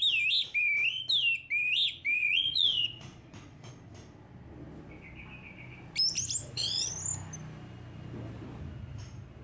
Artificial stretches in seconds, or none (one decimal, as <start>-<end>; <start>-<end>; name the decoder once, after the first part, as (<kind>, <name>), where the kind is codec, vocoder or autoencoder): 2.2-3.7 (vocoder, Vocos); 6.4-6.9